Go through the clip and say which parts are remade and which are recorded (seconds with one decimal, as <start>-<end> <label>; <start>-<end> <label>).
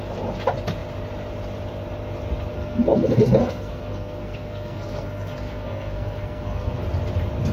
0.0-2.5 recorded; 2.5-6.8 remade; 6.8-7.5 recorded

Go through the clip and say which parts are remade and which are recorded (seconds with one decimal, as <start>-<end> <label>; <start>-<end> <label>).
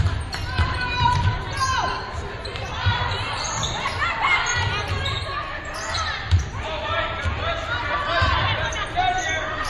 0.0-3.9 remade; 3.9-5.9 recorded; 5.9-9.7 remade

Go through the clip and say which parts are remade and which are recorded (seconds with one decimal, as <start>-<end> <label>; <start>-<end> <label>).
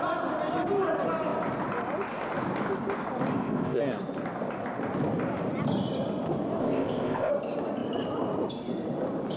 0.0-3.3 recorded; 3.3-3.8 remade; 3.8-6.6 recorded; 6.6-7.3 remade; 7.3-9.4 recorded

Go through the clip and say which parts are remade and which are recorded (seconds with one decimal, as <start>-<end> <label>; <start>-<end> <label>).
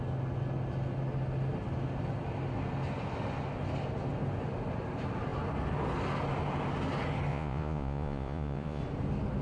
0.0-7.3 recorded; 7.3-8.8 remade; 8.8-9.4 recorded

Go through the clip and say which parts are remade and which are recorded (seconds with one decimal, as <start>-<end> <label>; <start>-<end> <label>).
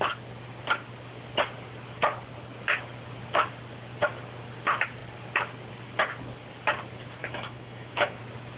0.0-7.2 recorded; 7.2-8.2 remade; 8.2-8.6 recorded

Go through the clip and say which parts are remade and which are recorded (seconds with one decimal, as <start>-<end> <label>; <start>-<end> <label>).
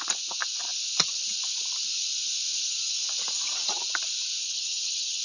0.0-4.4 recorded; 4.4-5.2 remade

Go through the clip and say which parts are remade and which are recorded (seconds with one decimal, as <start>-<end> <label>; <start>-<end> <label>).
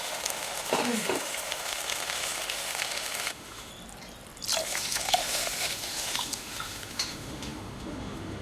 0.0-3.7 remade; 3.7-4.6 recorded; 4.6-8.4 remade